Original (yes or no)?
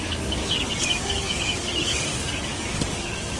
no